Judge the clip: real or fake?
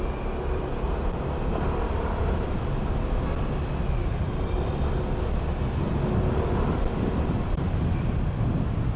real